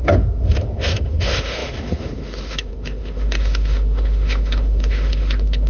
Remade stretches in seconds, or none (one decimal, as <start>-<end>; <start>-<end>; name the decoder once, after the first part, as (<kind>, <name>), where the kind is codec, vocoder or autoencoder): 0.0-5.7 (autoencoder, DAC-VAE)

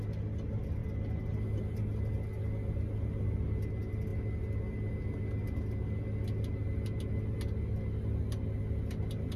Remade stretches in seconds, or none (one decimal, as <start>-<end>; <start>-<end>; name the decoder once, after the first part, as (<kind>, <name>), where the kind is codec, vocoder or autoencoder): none